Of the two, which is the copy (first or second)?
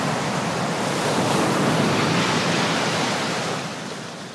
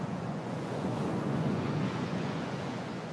second